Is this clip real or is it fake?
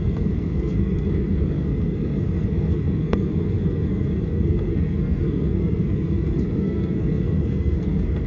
fake